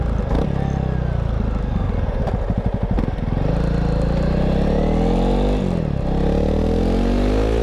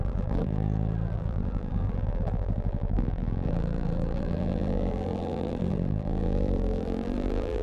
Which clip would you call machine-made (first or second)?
second